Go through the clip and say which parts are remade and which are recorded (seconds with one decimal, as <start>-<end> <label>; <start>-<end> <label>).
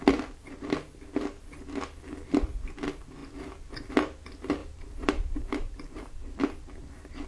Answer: 0.0-4.6 recorded; 4.6-6.4 remade; 6.4-7.3 recorded